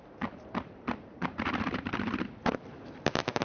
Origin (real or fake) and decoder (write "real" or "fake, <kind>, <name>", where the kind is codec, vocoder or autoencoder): fake, vocoder, BigVGAN v2